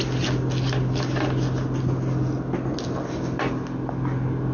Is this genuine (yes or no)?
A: yes